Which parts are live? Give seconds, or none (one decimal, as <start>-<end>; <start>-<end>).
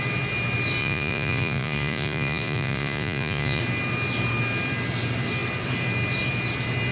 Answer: 0.0-0.8; 3.6-6.9